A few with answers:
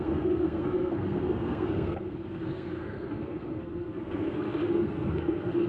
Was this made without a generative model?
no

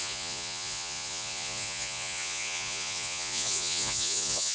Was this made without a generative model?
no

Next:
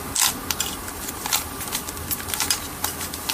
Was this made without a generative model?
yes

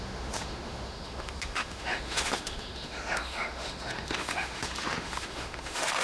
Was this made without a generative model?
no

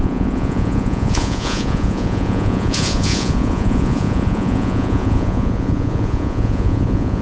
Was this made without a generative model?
no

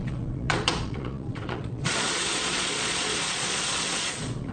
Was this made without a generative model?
no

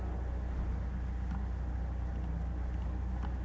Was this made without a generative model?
yes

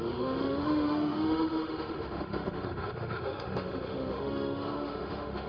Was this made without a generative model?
no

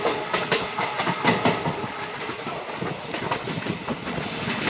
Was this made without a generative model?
yes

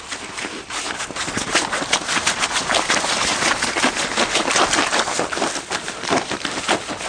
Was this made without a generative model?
yes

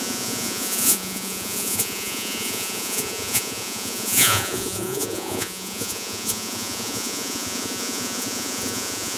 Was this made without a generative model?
no